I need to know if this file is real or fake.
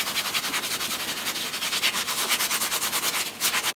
real